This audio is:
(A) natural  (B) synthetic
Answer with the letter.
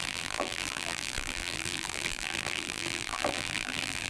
B